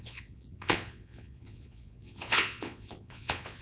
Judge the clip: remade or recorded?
remade